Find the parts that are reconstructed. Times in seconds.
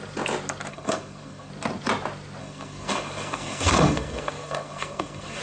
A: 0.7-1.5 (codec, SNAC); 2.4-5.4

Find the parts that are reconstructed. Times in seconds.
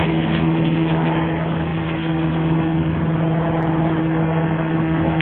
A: 0.0-3.0 (codec, SNAC); 4.0-5.2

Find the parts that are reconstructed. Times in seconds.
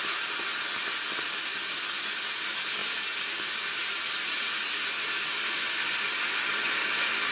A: none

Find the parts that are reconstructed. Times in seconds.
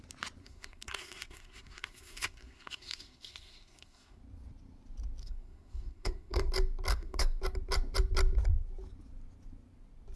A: 0.4-4.2 (codec, SNAC); 5.2-6.5; 6.9-7.4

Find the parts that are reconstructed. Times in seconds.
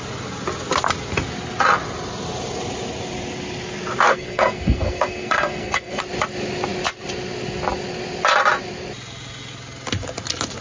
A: 4.1-6.0 (codec, SNAC)